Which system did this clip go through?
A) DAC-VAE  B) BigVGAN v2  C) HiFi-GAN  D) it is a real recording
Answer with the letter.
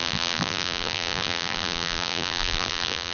B